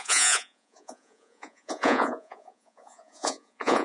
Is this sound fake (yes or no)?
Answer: yes